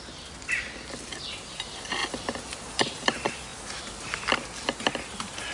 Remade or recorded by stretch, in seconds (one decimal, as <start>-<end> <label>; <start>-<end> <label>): 0.0-5.5 recorded